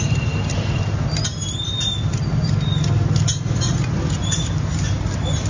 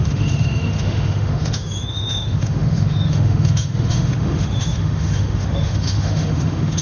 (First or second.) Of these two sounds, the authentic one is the first